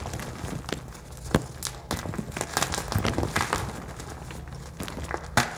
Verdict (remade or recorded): recorded